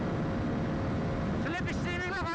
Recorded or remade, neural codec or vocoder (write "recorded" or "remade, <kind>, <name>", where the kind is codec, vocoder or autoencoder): recorded